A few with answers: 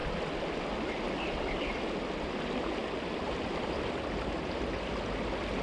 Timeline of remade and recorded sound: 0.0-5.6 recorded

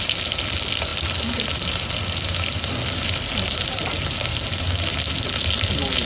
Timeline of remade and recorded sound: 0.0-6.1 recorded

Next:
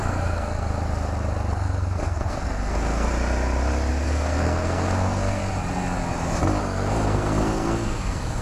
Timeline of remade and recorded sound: 0.0-0.7 remade; 0.7-1.5 recorded; 1.5-3.1 remade; 3.1-3.9 recorded; 3.9-5.4 remade; 5.4-6.6 recorded; 6.6-8.4 remade

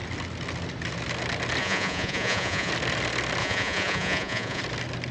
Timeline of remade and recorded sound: 0.0-1.6 recorded; 1.6-2.7 remade; 2.7-3.4 recorded; 3.4-4.6 remade; 4.6-5.1 recorded

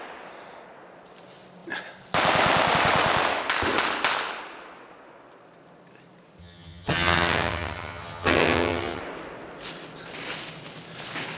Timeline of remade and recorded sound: 0.0-6.4 recorded; 6.4-9.0 remade; 9.0-11.4 recorded

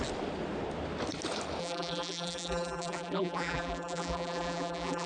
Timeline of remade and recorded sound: 0.0-1.6 recorded; 1.6-5.1 remade